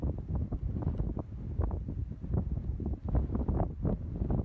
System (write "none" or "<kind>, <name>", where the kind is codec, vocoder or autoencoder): none